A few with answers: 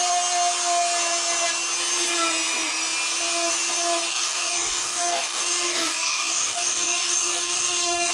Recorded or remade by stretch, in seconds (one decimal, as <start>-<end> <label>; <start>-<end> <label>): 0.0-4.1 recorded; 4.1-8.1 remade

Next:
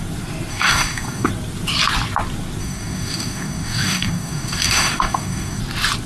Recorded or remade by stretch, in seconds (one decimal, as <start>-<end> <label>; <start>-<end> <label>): 0.0-0.5 recorded; 0.5-1.3 remade; 1.3-2.6 recorded; 2.6-5.6 remade; 5.6-6.1 recorded

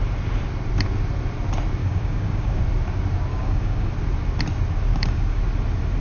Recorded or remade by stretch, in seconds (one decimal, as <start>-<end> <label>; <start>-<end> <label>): 0.0-1.8 recorded; 1.8-2.6 remade; 2.6-3.3 recorded; 3.3-3.9 remade; 3.9-4.9 recorded; 4.9-5.4 remade; 5.4-6.0 recorded

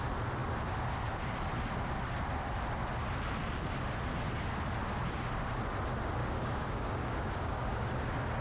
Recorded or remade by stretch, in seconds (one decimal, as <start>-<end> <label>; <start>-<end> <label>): 0.0-6.2 recorded; 6.2-7.9 remade; 7.9-8.4 recorded

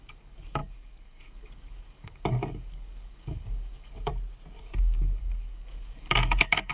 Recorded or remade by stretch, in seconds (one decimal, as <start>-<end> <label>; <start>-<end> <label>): 0.0-4.1 remade; 4.1-4.6 recorded; 4.6-6.7 remade

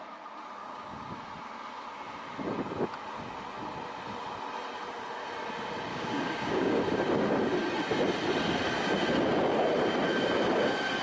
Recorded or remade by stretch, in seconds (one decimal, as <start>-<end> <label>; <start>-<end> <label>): 0.0-0.6 recorded; 0.6-1.2 remade; 1.2-5.9 recorded; 5.9-6.8 remade; 6.8-11.0 recorded

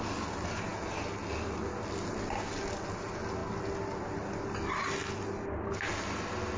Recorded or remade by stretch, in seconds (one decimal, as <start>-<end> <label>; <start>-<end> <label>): 0.0-6.6 recorded